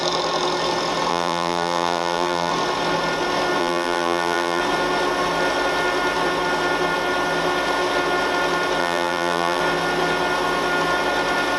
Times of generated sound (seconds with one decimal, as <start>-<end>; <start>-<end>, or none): 1.1-2.5; 3.6-4.6; 8.8-9.6